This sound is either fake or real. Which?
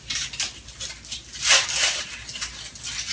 real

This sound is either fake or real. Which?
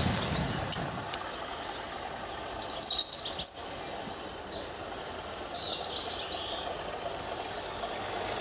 real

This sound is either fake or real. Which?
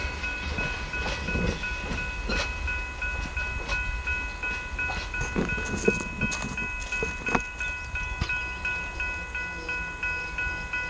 real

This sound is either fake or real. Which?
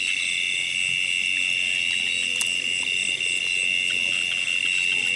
real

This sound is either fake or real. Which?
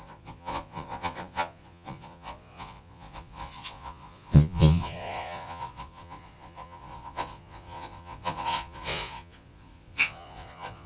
fake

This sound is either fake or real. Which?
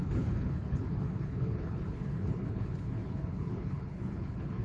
fake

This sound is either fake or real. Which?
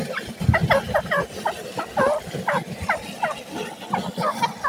real